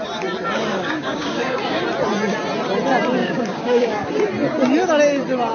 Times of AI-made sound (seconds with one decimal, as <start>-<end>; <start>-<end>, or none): 0.7-1.8; 3.2-4.1